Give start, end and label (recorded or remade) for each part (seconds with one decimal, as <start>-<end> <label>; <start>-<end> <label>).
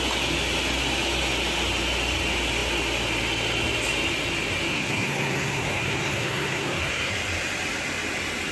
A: 0.0-4.7 recorded; 4.7-7.1 remade; 7.1-8.5 recorded